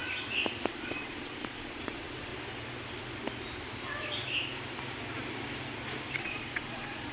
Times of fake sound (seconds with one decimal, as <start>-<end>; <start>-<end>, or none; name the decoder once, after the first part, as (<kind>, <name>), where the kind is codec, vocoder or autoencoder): 0.7-2.3 (vocoder, Vocos); 6.2-7.1